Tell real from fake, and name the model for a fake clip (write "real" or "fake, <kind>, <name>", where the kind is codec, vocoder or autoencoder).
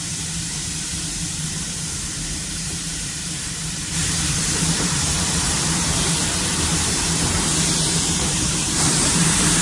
fake, vocoder, BigVGAN v2